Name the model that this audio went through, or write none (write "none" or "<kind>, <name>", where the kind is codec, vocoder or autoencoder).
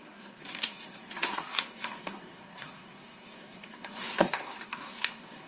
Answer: codec, SNAC